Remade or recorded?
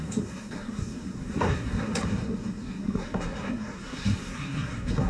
remade